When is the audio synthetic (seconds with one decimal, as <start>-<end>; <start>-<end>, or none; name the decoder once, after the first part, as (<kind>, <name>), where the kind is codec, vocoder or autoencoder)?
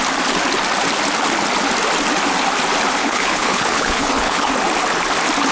3.0-4.5 (codec, HILCodec)